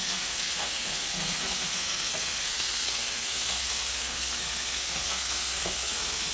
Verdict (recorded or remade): remade